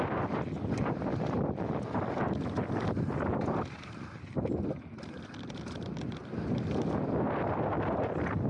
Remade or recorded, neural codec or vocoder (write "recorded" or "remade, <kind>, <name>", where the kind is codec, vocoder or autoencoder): recorded